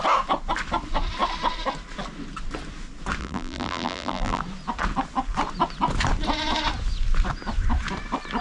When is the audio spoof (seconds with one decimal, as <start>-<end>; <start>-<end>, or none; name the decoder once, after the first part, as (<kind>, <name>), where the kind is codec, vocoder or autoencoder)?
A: 3.2-4.4 (vocoder, BigVGAN v2)